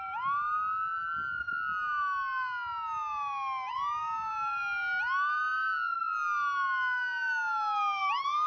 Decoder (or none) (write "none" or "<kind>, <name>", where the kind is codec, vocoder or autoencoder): none